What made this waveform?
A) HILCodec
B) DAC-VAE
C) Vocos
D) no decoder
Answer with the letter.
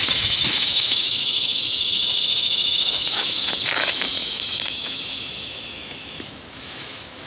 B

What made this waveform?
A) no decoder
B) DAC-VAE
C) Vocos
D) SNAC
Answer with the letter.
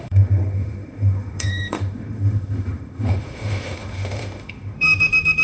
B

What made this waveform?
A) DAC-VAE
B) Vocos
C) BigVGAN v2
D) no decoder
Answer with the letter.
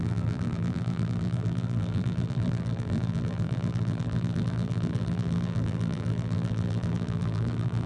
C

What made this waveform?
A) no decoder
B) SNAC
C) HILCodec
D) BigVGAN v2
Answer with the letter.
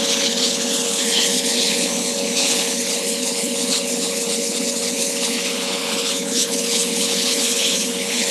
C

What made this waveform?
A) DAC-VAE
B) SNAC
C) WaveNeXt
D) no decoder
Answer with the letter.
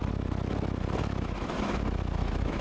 A